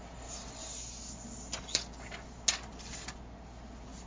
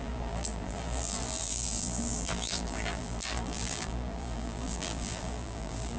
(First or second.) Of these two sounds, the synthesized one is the second